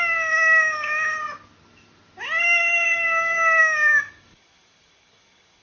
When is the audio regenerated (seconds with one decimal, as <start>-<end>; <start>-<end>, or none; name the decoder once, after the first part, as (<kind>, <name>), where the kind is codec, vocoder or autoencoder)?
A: 0.0-1.1 (codec, DAC); 2.4-5.6